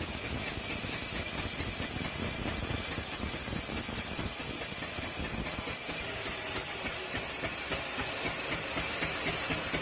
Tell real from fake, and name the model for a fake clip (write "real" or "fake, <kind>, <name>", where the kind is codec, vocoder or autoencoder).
real